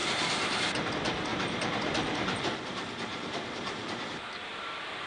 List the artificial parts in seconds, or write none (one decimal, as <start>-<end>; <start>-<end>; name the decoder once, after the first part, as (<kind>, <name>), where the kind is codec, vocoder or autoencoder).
0.0-0.9 (vocoder, BigVGAN v2); 1.3-2.4; 3.1-4.2

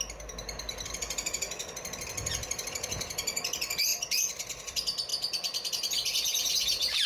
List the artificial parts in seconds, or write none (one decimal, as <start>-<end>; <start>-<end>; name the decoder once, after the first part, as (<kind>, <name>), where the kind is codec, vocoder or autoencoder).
0.0-3.9 (vocoder, BigVGAN v2); 4.6-5.1; 5.7-7.1

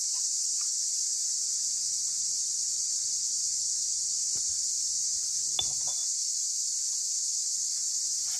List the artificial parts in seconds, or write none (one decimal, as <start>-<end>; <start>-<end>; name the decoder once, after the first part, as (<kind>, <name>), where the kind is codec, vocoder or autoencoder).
0.0-0.7 (vocoder, BigVGAN v2)